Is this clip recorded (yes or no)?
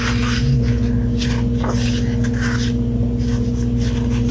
yes